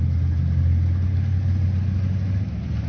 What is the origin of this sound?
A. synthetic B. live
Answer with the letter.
B